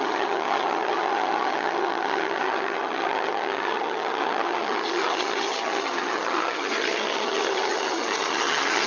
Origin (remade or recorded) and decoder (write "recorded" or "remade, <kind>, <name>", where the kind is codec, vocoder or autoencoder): remade, vocoder, HiFi-GAN